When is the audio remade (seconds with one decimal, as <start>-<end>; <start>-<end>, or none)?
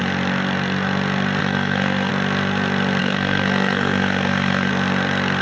1.4-2.1; 3.0-4.7